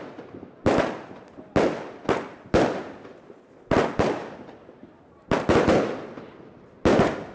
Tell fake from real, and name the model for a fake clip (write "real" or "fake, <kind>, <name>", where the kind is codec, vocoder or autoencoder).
real